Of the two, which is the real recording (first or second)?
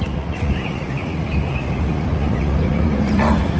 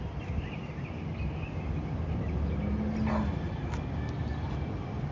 second